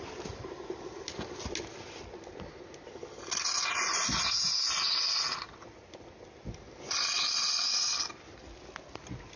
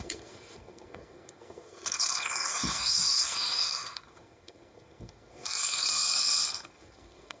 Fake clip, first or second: second